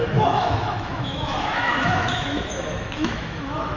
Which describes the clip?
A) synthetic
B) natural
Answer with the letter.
A